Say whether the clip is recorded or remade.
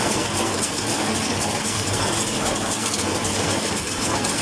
remade